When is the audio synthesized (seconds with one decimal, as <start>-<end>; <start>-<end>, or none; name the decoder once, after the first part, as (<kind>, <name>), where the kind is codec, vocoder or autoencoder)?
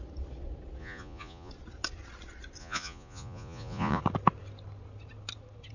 0.8-1.5 (vocoder, Vocos); 2.6-4.0